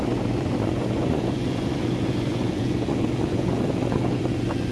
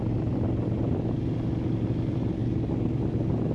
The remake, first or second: first